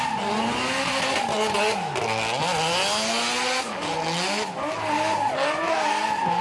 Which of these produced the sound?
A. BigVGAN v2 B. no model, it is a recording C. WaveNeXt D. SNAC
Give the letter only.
B